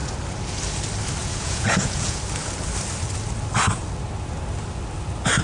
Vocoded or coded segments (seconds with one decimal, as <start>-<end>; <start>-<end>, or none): 1.2-2.2